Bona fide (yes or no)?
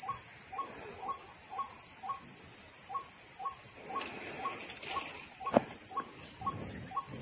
yes